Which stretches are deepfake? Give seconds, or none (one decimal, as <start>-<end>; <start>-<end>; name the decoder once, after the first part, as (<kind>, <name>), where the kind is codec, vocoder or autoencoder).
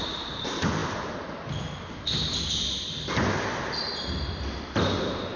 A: none